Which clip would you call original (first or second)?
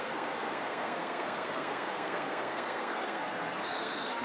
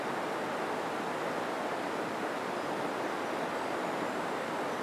second